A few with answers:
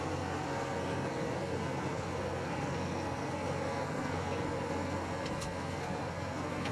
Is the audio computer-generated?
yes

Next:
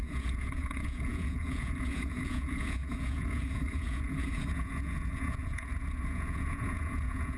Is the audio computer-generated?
yes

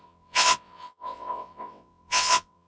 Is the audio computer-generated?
yes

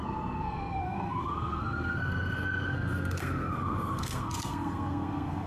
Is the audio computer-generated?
yes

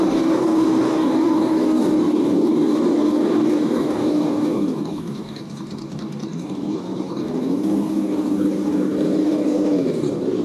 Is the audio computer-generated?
yes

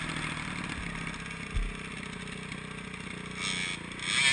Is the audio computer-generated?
no